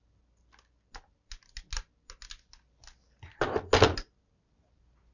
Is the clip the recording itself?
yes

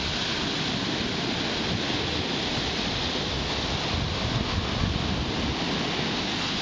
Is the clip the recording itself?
yes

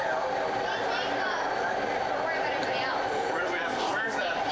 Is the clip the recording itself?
yes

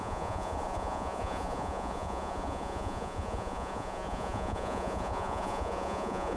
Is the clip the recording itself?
no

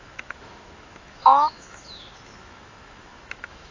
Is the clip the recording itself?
no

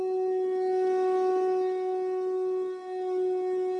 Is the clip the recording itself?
yes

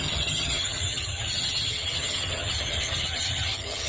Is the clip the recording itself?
no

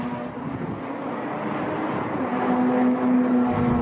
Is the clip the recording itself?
yes